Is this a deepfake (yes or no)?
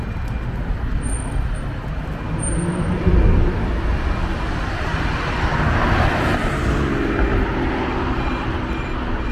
no